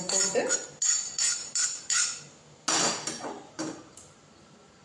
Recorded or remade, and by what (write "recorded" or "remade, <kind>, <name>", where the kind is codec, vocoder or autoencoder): recorded